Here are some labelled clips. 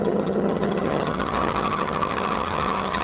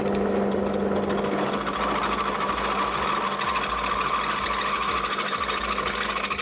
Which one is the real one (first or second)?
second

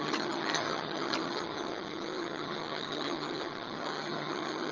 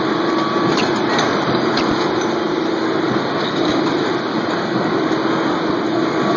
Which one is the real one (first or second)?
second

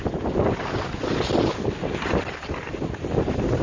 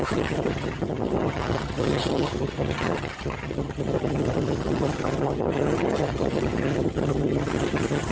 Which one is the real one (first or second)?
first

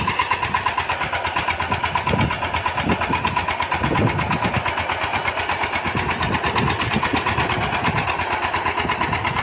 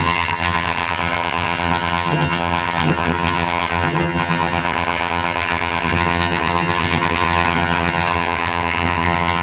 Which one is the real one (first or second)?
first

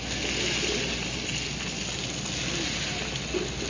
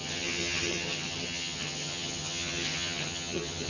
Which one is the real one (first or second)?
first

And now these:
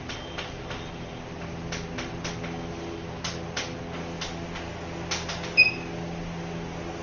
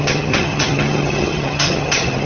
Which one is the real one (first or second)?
first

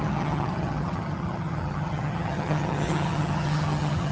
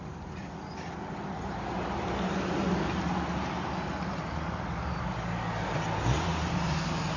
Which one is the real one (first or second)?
second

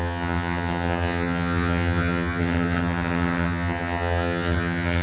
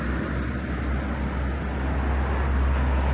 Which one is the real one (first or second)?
second